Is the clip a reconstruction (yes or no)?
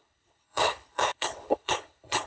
yes